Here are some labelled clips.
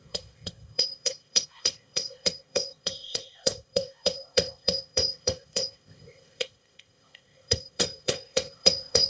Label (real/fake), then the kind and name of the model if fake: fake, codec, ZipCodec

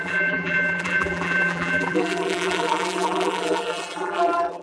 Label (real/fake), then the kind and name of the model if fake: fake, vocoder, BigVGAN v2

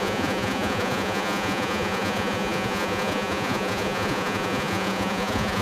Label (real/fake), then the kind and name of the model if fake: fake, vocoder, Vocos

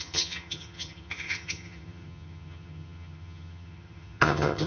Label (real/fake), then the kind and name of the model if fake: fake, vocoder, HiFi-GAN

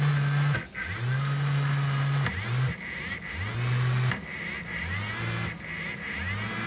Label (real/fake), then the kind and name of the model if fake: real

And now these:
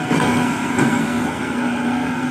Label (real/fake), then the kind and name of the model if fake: fake, codec, SNAC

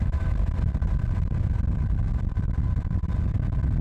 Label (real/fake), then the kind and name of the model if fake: real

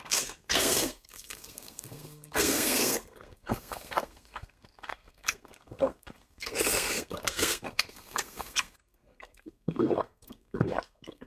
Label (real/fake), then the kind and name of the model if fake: fake, codec, SNAC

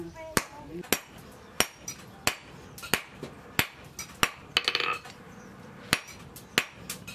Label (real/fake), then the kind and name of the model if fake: real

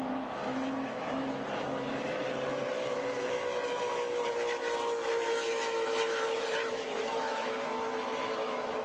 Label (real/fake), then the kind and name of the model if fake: fake, autoencoder, DAC-VAE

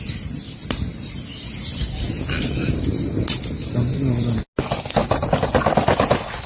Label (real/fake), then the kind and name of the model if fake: real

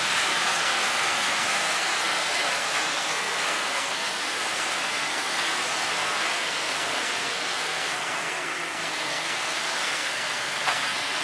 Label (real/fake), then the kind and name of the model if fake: fake, codec, SNAC